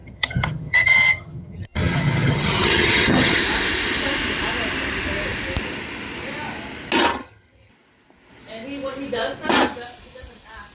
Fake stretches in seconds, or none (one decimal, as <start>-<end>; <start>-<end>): 0.0-3.4; 7.1-7.7